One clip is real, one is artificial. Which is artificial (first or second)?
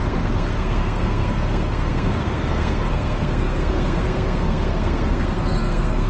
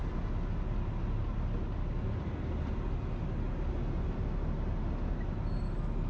first